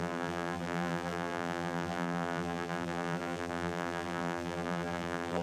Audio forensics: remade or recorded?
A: remade